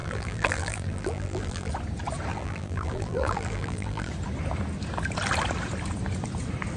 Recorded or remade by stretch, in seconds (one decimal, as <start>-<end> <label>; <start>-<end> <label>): 0.0-1.7 remade; 1.7-2.3 recorded; 2.3-4.1 remade; 4.1-6.8 recorded